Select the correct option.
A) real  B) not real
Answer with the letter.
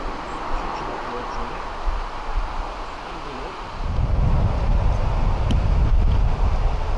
A